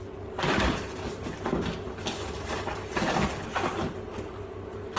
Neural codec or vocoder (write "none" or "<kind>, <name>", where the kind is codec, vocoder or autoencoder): none